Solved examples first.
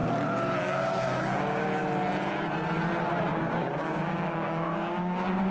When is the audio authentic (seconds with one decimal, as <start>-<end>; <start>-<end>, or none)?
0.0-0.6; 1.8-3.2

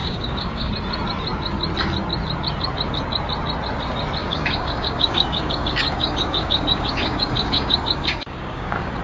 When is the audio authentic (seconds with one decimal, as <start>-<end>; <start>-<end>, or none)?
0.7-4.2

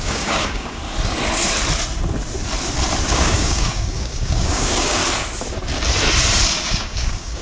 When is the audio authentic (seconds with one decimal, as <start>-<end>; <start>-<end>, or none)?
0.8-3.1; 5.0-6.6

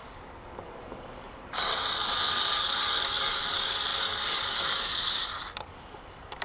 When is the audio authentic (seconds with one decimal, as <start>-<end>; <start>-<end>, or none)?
1.7-2.3